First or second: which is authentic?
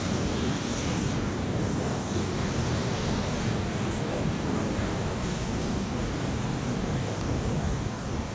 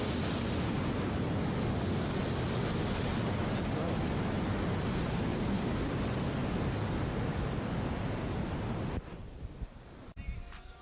second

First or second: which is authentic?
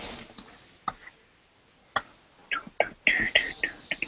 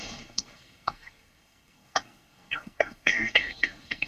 first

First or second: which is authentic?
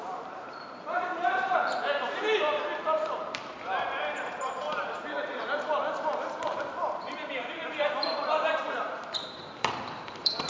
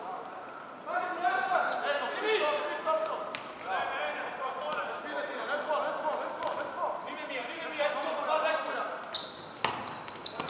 second